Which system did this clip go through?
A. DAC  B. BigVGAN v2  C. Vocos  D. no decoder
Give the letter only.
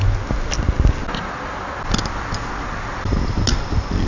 D